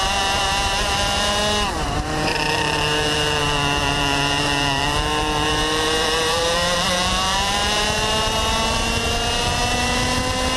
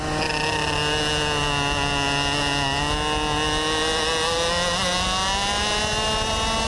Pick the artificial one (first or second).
first